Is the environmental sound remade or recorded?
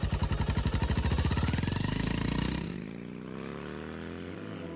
recorded